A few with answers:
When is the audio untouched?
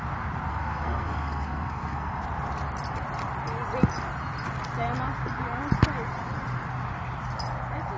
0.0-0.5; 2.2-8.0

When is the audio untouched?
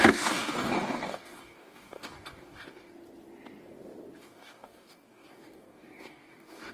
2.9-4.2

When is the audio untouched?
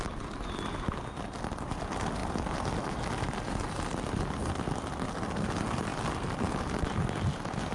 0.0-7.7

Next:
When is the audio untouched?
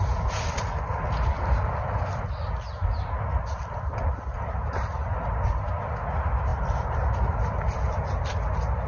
0.0-8.9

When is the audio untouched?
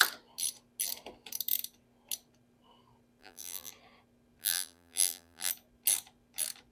0.0-3.2; 3.7-4.4; 5.5-6.7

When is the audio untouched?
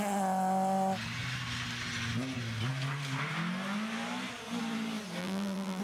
0.0-5.2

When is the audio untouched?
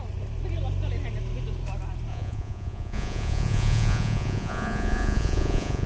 0.0-2.1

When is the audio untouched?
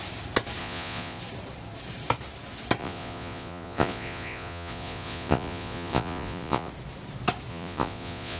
0.0-0.6; 1.2-2.8; 6.7-7.5